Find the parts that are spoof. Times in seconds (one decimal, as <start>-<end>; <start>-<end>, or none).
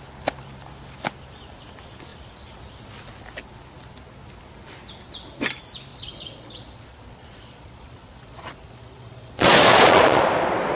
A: 5.9-10.2